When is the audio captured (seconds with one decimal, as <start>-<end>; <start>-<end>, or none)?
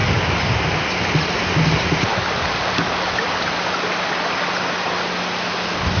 0.0-6.0